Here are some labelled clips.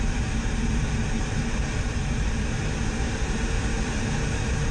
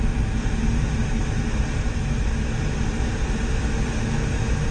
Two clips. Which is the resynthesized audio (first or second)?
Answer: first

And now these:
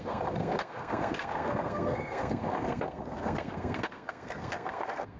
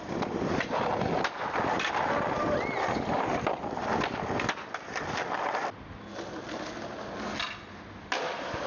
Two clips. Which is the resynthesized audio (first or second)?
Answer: first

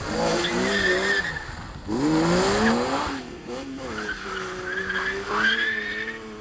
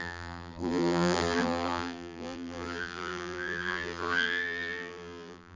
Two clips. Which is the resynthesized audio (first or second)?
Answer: second